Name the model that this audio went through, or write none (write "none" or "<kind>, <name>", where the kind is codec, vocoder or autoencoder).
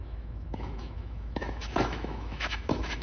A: autoencoder, DAC-VAE